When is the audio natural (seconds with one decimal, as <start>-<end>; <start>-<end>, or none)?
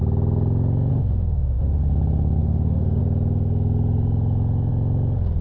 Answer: 0.0-0.9; 1.8-2.4; 3.0-5.4